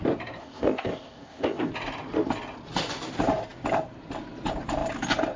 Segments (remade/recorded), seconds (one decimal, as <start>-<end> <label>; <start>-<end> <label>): 0.0-0.4 recorded; 0.4-1.7 remade; 1.7-5.4 recorded